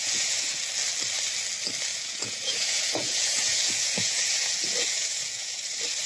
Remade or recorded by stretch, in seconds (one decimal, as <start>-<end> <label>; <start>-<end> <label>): 0.0-0.6 remade; 0.6-1.9 recorded; 1.9-5.6 remade; 5.6-6.1 recorded